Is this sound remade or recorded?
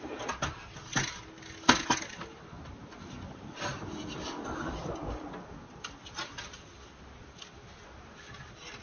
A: recorded